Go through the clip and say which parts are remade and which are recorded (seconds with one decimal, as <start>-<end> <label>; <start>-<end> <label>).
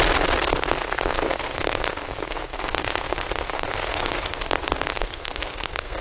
0.0-0.8 recorded; 0.8-4.4 remade; 4.4-4.9 recorded; 4.9-6.0 remade